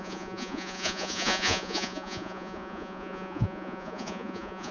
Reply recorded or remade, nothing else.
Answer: remade